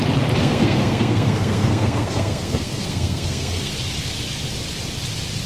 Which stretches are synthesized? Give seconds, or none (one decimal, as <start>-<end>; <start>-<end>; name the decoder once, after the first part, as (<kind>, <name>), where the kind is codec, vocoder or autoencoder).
0.4-3.7 (codec, SNAC)